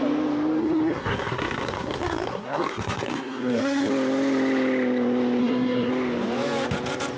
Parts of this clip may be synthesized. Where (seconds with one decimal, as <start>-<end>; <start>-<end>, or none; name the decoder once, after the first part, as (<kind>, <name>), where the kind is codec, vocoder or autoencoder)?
0.6-3.9 (codec, SNAC); 5.4-5.9